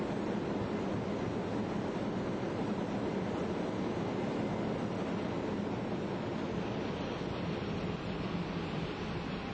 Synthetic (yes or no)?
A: no